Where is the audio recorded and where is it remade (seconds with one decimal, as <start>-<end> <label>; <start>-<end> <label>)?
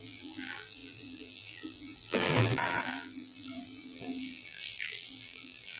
0.0-5.8 remade